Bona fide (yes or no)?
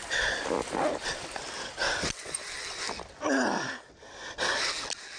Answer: yes